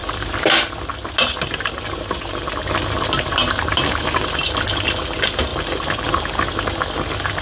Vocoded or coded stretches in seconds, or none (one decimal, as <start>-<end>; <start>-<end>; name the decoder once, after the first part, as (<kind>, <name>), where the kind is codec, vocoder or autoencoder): none